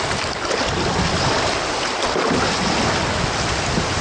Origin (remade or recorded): recorded